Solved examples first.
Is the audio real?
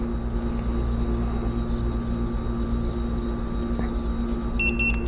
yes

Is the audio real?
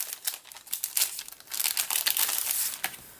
yes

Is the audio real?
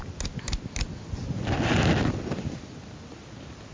yes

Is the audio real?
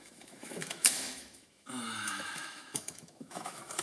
no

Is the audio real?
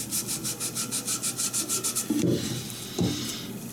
yes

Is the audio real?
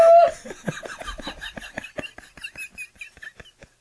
yes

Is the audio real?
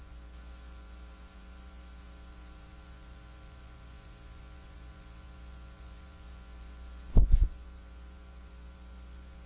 no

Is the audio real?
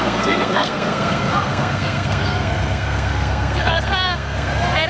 no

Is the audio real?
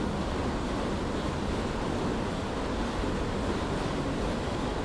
yes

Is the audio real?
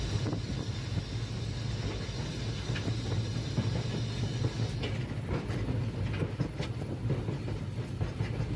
yes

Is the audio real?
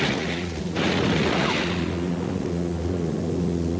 no